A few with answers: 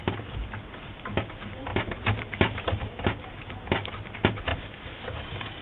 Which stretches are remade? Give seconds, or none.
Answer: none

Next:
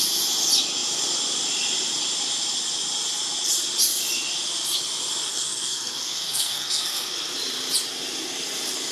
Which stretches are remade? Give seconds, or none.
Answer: 5.3-7.1 (codec, SNAC)